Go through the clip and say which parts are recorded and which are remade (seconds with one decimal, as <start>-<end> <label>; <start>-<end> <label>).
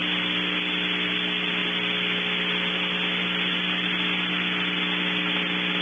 0.0-5.8 recorded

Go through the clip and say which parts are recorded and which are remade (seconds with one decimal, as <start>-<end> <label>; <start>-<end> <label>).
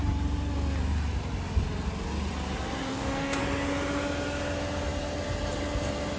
0.0-2.9 recorded; 2.9-3.4 remade; 3.4-6.2 recorded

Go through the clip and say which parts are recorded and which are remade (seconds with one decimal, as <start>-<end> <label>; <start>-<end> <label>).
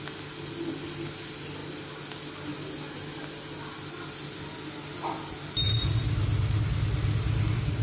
0.0-7.8 recorded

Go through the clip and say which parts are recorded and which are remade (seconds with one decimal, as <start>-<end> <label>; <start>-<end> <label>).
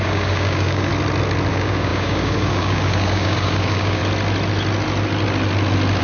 0.0-0.9 remade; 0.9-1.5 recorded; 1.5-4.0 remade; 4.0-6.0 recorded